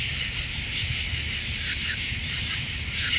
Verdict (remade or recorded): recorded